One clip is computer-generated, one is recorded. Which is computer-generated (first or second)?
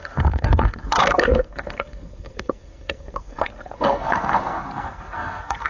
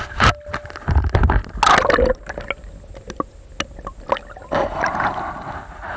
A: first